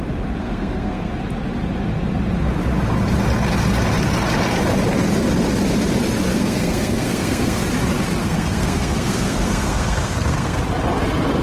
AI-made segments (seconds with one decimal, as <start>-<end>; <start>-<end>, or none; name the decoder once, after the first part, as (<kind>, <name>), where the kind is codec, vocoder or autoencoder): 0.4-1.1 (codec, SNAC); 6.3-7.6; 8.2-10.6